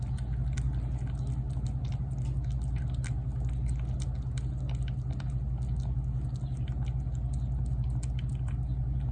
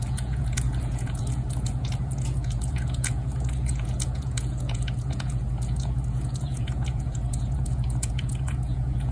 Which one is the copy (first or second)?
second